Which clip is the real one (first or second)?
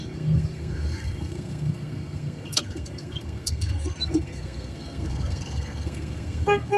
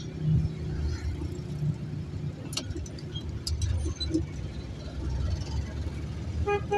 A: second